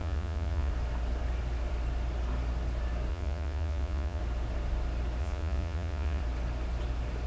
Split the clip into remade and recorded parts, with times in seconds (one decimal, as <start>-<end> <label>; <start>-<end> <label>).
0.0-0.7 remade; 0.7-3.1 recorded; 3.1-4.2 remade; 4.2-5.2 recorded; 5.2-6.2 remade; 6.2-7.3 recorded